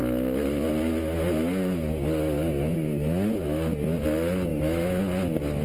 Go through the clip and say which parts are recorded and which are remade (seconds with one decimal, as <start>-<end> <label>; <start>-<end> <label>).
0.0-4.5 recorded; 4.5-5.0 remade; 5.0-5.6 recorded